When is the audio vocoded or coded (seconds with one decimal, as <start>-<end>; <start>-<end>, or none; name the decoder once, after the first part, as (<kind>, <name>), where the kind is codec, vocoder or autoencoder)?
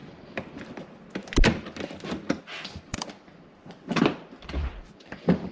2.9-4.0 (vocoder, BigVGAN v2)